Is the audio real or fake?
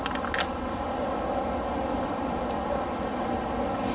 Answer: real